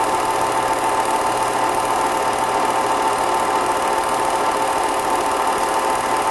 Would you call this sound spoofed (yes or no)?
no